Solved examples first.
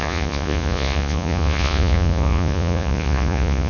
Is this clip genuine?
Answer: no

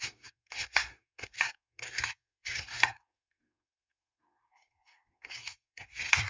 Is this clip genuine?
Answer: no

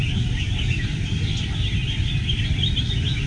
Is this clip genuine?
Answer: yes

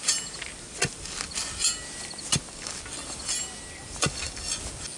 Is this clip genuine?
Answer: yes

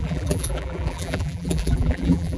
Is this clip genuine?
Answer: no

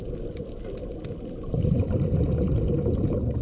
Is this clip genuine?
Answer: yes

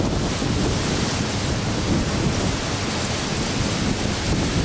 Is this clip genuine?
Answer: yes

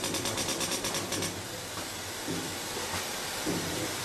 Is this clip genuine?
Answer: no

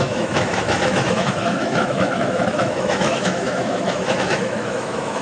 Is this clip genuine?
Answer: no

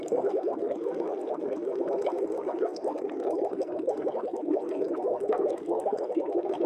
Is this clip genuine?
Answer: no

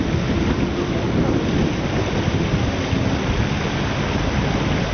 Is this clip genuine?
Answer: yes